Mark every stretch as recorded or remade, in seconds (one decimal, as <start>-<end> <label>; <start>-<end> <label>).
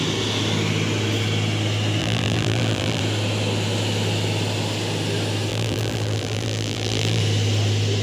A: 0.0-2.0 recorded; 2.0-3.0 remade; 3.0-5.5 recorded; 5.5-7.2 remade; 7.2-8.0 recorded